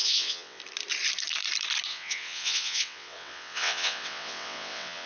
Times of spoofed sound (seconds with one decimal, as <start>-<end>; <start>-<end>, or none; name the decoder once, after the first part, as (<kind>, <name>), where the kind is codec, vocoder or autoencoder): 0.0-0.6 (vocoder, WaveNeXt); 1.9-5.1